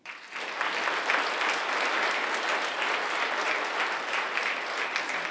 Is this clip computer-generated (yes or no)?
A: no